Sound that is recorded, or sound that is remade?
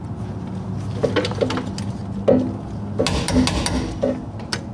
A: recorded